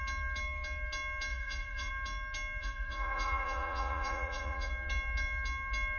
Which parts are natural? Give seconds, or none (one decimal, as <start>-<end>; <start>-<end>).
0.0-1.3; 1.9-2.6; 4.7-6.0